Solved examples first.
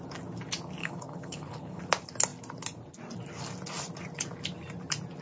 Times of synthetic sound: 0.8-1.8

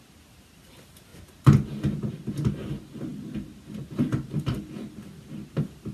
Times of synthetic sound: none

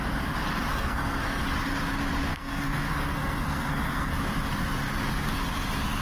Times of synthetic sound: 0.7-1.4; 2.3-4.1

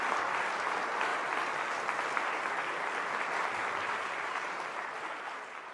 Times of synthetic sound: 1.1-3.1

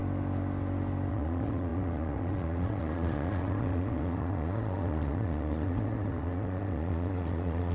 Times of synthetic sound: 1.1-7.7

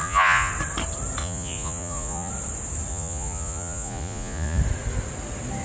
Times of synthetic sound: 0.0-0.5; 1.2-2.3; 2.9-4.6